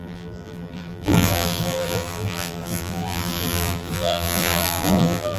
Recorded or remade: remade